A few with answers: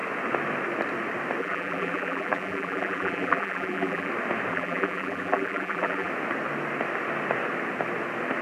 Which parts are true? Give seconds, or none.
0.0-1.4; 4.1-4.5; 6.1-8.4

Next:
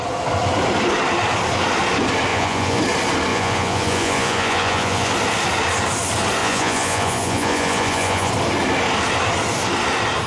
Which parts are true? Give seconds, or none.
0.0-2.3; 2.8-3.3; 5.1-6.4; 8.3-10.3

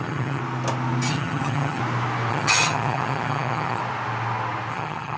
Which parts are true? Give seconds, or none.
0.4-1.1; 1.8-2.3; 3.8-4.7

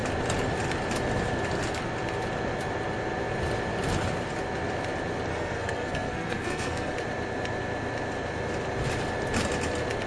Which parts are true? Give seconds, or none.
0.0-5.3; 6.9-10.1

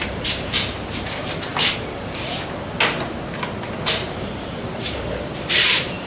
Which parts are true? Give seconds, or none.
1.5-4.0

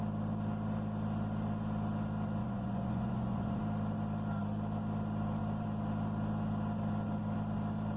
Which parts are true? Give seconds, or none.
0.0-2.4; 3.6-8.0

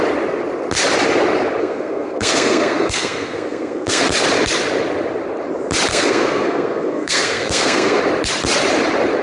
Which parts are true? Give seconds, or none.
0.0-1.6; 4.0-5.9; 8.0-9.2

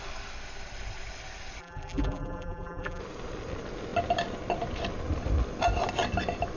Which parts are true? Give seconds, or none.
0.0-1.6; 3.0-6.6